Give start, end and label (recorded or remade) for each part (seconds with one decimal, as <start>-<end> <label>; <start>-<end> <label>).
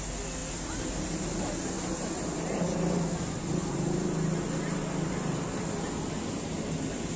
0.0-7.2 recorded